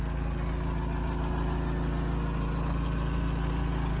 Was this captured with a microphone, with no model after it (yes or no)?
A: yes